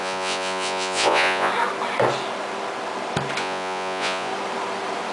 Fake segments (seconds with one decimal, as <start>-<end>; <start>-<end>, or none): 0.0-1.5; 3.4-4.3